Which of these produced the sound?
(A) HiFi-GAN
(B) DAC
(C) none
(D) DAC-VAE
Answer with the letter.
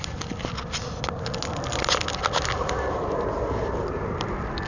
C